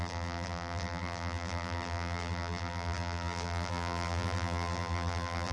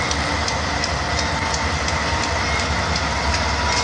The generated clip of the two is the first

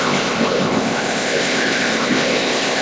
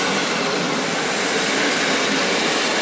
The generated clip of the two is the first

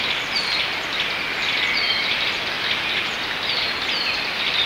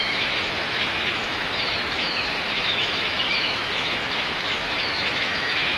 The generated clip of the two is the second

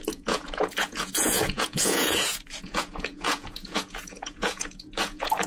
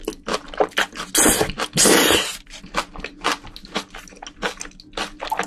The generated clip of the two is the first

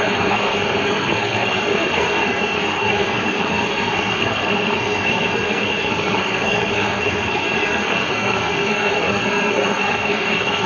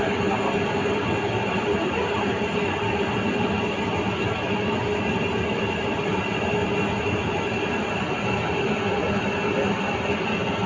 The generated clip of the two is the first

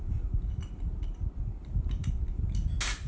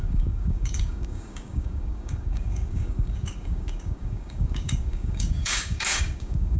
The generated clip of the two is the second